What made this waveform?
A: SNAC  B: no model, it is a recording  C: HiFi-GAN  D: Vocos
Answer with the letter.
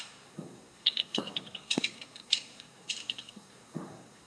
A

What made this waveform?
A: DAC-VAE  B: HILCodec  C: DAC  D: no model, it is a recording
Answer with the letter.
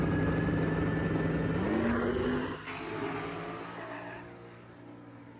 D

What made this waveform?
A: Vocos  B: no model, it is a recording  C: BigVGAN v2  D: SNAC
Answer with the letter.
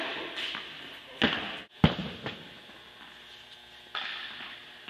B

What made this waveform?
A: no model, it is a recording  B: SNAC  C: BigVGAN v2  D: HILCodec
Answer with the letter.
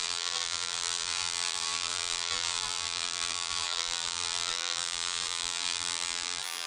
C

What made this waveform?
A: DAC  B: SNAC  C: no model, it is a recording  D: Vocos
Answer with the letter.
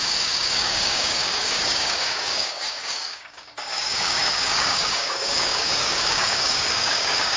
A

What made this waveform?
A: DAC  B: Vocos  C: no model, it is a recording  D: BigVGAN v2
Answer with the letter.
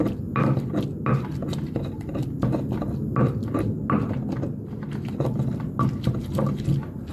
C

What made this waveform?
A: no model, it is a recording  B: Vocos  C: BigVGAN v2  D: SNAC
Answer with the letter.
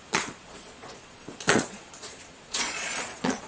B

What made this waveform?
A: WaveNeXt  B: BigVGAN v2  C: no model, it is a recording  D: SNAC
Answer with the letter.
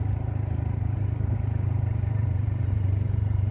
B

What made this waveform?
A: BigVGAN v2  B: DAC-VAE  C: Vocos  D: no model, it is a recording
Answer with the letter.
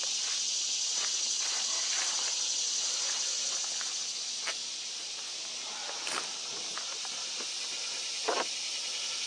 D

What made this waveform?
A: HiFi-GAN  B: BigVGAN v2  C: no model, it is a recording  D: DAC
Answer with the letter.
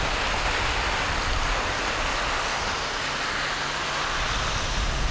C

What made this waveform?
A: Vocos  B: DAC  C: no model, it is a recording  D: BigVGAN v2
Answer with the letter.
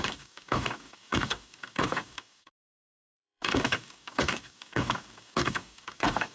B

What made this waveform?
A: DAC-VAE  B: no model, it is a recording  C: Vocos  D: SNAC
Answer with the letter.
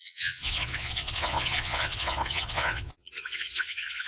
C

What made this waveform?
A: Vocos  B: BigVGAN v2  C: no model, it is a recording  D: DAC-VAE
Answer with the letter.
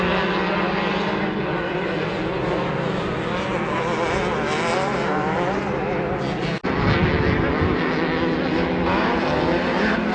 C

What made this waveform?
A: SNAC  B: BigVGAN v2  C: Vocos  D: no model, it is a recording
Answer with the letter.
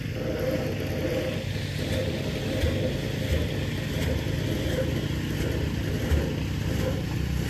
D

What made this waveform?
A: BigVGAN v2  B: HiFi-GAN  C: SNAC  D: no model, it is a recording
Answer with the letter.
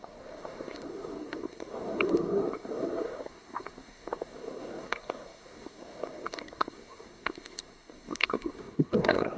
C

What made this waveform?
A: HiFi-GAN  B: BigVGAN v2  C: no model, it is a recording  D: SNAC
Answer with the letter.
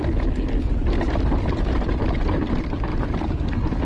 C